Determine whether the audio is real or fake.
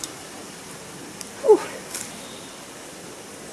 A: real